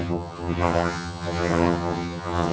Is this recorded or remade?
remade